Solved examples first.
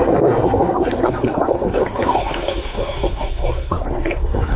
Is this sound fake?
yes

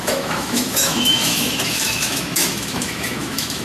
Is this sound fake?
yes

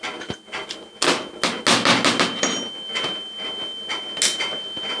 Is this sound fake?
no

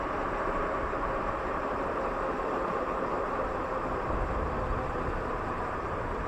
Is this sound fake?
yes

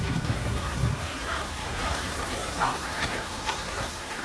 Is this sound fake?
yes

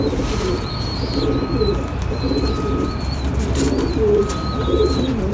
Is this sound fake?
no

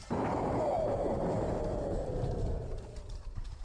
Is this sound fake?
yes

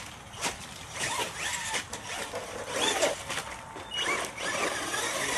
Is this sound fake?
no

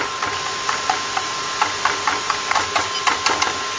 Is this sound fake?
no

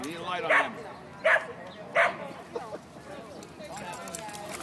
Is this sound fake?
no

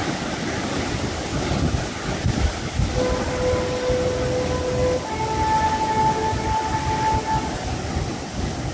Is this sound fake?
no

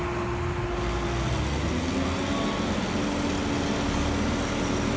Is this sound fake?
no